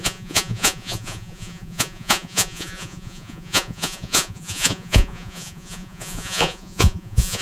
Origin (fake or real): fake